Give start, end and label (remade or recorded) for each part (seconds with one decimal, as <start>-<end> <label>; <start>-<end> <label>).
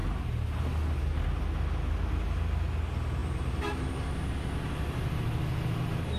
0.0-6.2 recorded